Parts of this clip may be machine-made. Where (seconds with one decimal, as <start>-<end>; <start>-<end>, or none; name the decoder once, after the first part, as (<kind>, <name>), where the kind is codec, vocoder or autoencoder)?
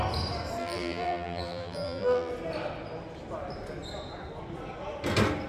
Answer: 0.6-2.3 (vocoder, BigVGAN v2)